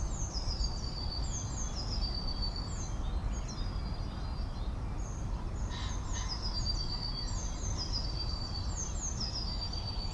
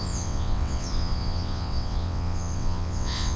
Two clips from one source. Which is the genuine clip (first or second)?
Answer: first